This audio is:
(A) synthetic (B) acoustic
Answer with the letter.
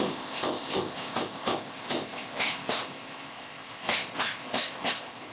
A